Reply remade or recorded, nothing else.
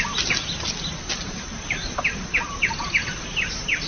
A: recorded